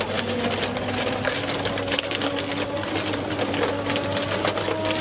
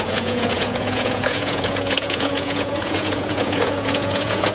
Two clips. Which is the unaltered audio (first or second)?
first